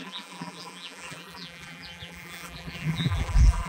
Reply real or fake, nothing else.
fake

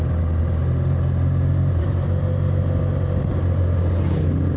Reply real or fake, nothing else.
real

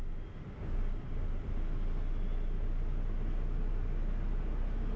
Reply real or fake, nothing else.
real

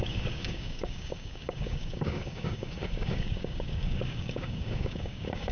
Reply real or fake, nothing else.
fake